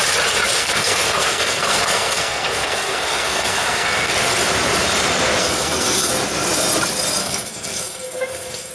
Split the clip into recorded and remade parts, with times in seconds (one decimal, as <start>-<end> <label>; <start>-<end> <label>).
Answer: 0.0-0.6 recorded; 0.6-4.1 remade; 4.1-5.4 recorded; 5.4-6.1 remade; 6.1-7.2 recorded; 7.2-8.7 remade

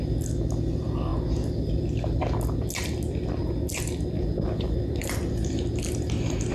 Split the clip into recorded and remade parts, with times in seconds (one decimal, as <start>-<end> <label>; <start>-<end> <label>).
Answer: 0.0-6.5 recorded

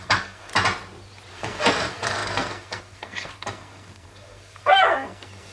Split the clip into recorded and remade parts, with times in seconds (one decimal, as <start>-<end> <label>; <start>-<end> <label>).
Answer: 0.0-0.5 remade; 0.5-1.3 recorded; 1.3-5.5 remade

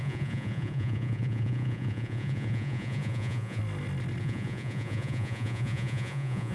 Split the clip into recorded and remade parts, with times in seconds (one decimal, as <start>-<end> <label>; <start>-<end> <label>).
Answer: 0.0-3.6 remade; 3.6-4.2 recorded; 4.2-6.5 remade

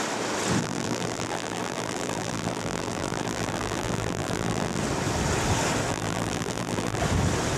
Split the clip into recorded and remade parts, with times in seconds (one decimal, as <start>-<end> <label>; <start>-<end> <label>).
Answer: 0.0-0.6 recorded; 0.6-4.8 remade; 4.8-5.9 recorded; 5.9-7.0 remade; 7.0-7.6 recorded

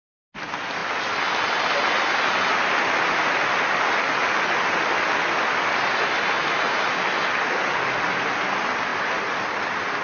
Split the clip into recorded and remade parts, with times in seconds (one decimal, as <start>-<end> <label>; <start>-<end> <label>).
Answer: 0.0-10.0 recorded

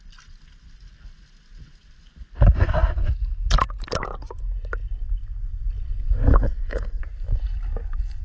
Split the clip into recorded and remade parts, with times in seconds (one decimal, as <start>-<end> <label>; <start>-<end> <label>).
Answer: 0.0-6.3 recorded; 6.3-7.0 remade; 7.0-8.2 recorded